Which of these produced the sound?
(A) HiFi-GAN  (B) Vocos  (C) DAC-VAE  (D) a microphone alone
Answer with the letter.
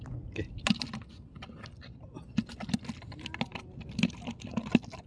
D